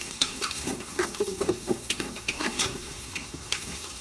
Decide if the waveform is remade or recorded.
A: remade